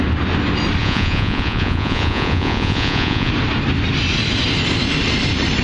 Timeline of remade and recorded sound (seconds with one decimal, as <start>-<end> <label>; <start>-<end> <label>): 0.0-0.8 recorded; 0.8-3.3 remade; 3.3-5.6 recorded